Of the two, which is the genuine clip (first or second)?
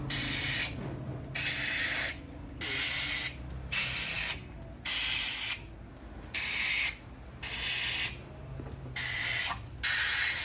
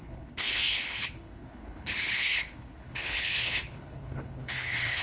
first